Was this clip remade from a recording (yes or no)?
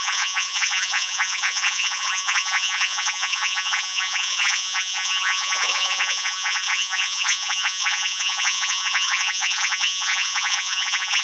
yes